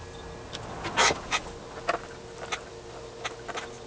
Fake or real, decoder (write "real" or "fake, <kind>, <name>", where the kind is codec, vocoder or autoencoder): real